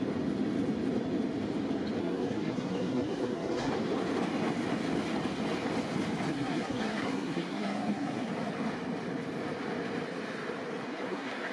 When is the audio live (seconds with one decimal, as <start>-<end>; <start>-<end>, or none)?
0.0-2.0; 3.7-6.3; 8.3-10.8